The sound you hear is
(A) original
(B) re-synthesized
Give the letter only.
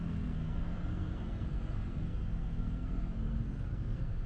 B